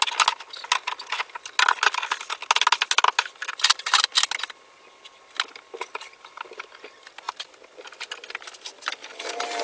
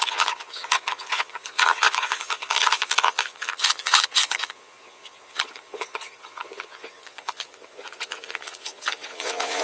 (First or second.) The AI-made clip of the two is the second